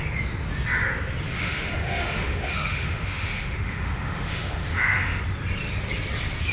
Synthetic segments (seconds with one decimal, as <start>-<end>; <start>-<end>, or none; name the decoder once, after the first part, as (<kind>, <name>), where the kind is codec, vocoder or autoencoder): 1.3-5.2 (autoencoder, DAC-VAE)